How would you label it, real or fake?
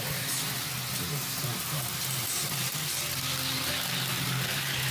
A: real